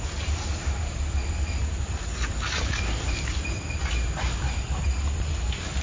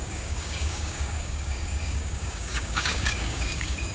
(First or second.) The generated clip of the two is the second